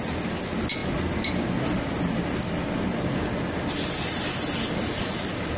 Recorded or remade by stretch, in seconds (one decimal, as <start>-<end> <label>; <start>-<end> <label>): 0.0-5.6 recorded